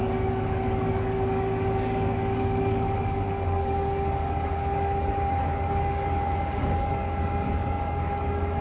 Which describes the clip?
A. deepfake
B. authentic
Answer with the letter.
A